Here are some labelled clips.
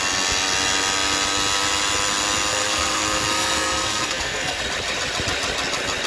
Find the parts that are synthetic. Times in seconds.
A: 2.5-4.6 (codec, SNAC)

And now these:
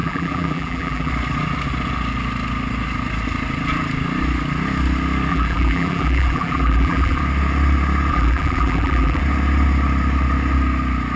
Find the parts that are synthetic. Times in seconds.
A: 0.0-1.1 (vocoder, BigVGAN v2); 5.3-7.2; 8.1-9.2

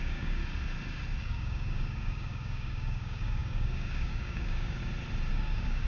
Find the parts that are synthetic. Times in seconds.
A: 0.0-0.4 (codec, DAC); 1.2-4.8; 5.3-5.9

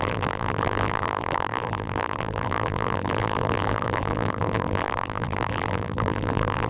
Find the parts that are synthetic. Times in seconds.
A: 0.0-6.7 (vocoder, BigVGAN v2)

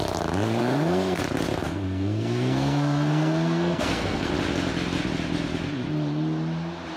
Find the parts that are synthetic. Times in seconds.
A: 0.6-1.2 (codec, SNAC); 1.6-4.3

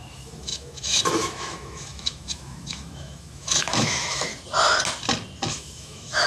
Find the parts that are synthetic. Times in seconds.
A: 0.0-4.3 (autoencoder, DAC-VAE); 5.5-6.3

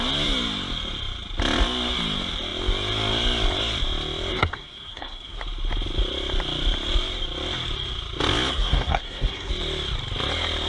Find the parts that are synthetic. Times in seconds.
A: 4.3-5.4 (codec, SNAC); 8.5-9.5